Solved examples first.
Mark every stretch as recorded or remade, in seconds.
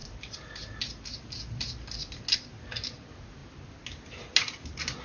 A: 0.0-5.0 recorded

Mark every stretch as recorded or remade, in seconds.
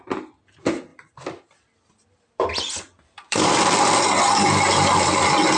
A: 0.0-0.9 recorded; 0.9-4.3 remade; 4.3-5.6 recorded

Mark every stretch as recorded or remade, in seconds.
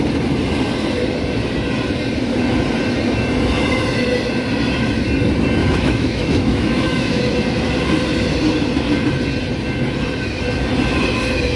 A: 0.0-5.6 recorded; 5.6-7.2 remade; 7.2-11.6 recorded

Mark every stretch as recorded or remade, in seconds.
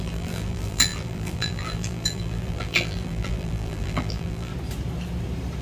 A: 0.0-4.5 remade; 4.5-5.6 recorded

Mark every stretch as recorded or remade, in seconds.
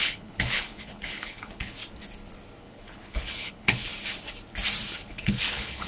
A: 0.0-1.8 remade; 1.8-2.6 recorded; 2.6-3.9 remade; 3.9-5.1 recorded; 5.1-5.9 remade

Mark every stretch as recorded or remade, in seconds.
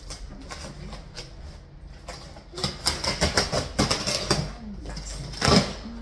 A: 0.0-6.0 recorded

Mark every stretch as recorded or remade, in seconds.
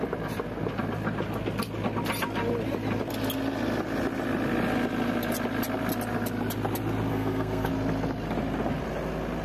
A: 0.0-7.1 recorded; 7.1-7.7 remade; 7.7-9.4 recorded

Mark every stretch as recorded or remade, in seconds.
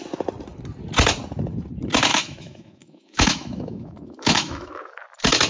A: 0.0-2.1 recorded; 2.1-4.9 remade; 4.9-5.5 recorded